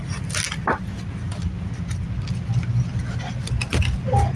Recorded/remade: recorded